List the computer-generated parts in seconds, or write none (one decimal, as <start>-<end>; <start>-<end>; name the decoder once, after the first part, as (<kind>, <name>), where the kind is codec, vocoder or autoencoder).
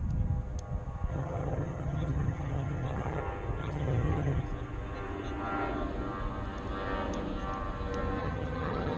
1.1-3.2 (vocoder, HiFi-GAN); 3.6-4.4; 8.2-9.0